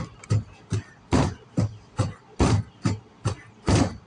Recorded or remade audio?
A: recorded